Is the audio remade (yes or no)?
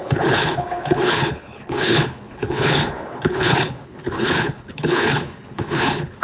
yes